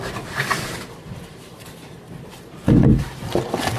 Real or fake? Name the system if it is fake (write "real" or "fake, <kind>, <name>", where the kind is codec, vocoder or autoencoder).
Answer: fake, vocoder, BigVGAN v2